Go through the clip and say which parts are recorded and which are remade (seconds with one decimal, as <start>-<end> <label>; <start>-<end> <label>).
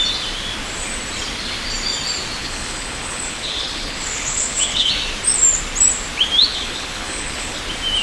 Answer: 0.0-2.4 recorded; 2.4-4.9 remade; 4.9-6.5 recorded; 6.5-7.6 remade; 7.6-8.0 recorded